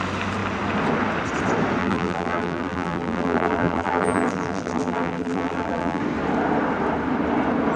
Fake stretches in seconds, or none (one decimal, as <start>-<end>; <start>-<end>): 1.8-6.0

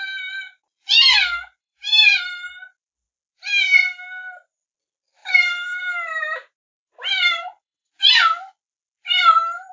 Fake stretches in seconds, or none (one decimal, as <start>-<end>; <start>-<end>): 1.6-2.2; 3.8-4.6; 5.2-7.9

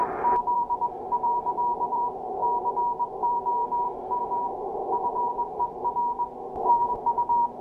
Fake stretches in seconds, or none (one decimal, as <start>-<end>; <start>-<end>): 0.0-2.4; 3.2-5.6; 6.6-7.6

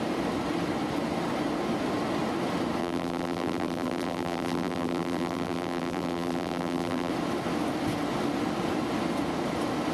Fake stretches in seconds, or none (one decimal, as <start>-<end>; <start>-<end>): 2.8-7.1

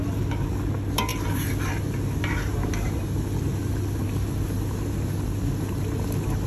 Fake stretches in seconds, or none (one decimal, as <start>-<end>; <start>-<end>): none